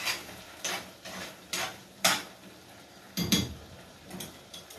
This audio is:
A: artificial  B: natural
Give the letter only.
A